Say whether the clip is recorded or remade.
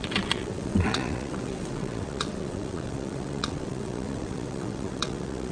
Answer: remade